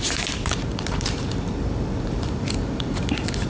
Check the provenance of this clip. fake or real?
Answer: fake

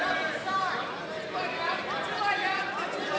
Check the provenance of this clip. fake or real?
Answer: fake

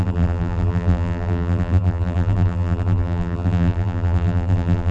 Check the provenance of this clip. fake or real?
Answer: fake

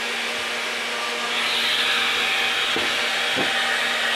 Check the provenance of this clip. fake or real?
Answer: real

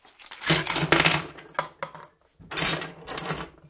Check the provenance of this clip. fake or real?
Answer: real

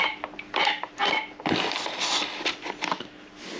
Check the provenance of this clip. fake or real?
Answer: real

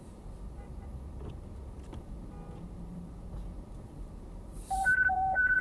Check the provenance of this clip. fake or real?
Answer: fake